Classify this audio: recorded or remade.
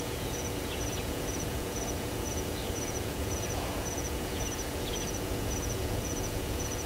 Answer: remade